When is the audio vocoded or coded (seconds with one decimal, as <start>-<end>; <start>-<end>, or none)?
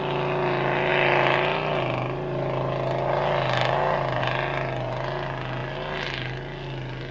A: none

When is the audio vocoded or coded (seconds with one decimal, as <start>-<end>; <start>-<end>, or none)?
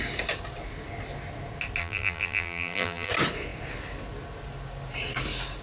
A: 1.8-3.1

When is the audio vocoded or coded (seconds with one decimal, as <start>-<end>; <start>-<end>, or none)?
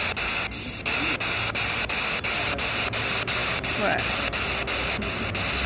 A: none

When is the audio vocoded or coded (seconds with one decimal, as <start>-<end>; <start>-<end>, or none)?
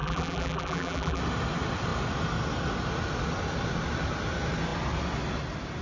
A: 0.0-1.2